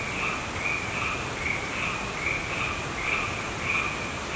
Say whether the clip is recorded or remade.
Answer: recorded